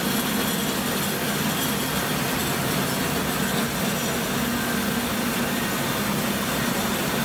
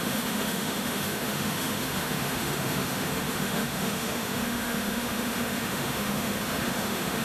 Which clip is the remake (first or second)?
second